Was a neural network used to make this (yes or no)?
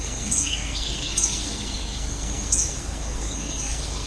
yes